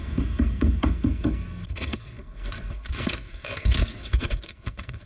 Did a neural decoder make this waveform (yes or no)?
yes